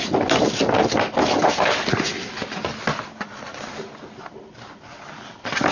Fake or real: real